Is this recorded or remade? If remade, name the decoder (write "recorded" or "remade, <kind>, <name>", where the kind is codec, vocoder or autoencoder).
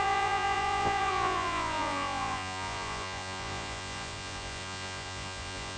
remade, vocoder, Vocos